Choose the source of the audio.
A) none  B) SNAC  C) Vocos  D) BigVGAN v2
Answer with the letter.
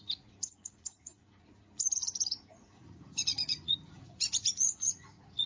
C